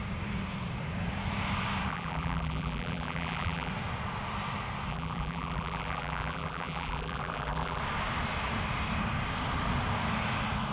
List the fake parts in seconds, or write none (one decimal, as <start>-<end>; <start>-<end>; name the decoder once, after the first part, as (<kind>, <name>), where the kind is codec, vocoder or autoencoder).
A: 1.9-3.7 (vocoder, BigVGAN v2); 4.9-7.8